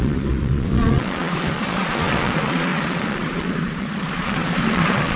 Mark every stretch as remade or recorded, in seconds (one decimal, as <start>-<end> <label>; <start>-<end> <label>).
0.0-5.2 remade